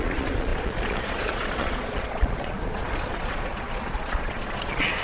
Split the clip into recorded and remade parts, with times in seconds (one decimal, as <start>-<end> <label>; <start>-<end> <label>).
0.0-5.0 remade